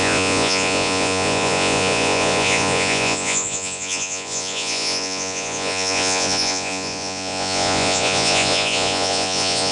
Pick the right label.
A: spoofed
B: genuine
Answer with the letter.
A